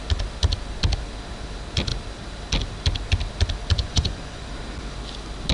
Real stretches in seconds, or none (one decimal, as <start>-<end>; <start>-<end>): 0.0-3.8; 4.5-5.5